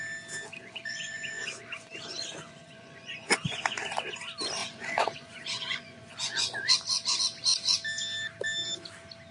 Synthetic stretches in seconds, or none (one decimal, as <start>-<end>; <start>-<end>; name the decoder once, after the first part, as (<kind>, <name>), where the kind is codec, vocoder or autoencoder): 0.6-3.9 (vocoder, Vocos); 4.6-6.7